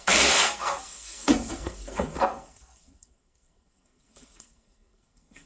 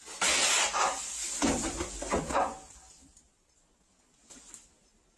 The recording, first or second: second